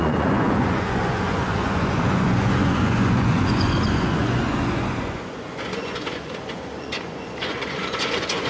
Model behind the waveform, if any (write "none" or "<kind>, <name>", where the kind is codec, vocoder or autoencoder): vocoder, Vocos